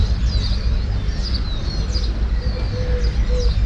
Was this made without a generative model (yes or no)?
yes